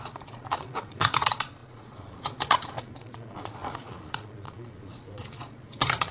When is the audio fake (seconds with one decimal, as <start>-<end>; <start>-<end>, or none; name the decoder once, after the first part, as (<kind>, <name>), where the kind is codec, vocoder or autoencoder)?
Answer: 0.0-6.1 (vocoder, Vocos)